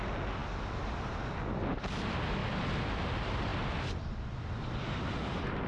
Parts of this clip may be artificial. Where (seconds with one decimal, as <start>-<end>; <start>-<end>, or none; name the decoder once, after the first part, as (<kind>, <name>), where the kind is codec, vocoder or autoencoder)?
none